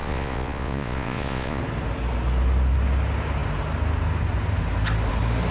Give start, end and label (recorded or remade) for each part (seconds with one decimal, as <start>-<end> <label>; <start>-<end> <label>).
0.0-1.6 remade; 1.6-5.5 recorded